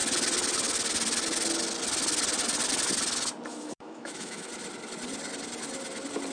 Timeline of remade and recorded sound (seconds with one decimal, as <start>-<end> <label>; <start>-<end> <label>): 0.0-3.5 recorded; 3.5-4.5 remade; 4.5-6.3 recorded